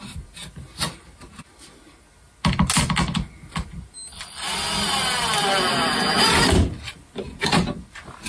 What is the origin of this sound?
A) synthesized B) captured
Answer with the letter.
B